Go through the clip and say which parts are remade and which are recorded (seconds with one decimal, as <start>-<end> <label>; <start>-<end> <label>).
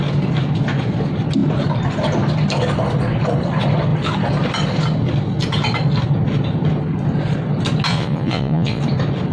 0.0-7.9 recorded; 7.9-8.8 remade; 8.8-9.3 recorded